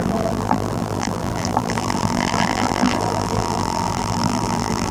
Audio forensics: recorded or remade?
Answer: remade